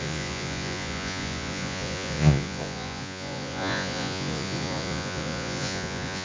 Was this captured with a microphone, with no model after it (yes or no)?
no